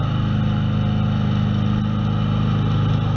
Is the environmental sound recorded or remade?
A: recorded